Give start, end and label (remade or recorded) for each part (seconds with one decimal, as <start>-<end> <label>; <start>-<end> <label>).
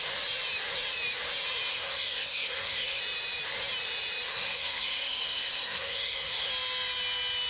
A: 0.0-1.7 recorded; 1.7-3.0 remade; 3.0-4.3 recorded; 4.3-6.5 remade; 6.5-7.5 recorded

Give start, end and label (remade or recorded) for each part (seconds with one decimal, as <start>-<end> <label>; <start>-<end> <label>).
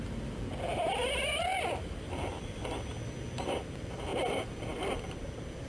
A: 0.0-5.7 recorded